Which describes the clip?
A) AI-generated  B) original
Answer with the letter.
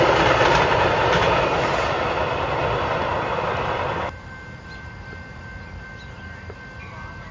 B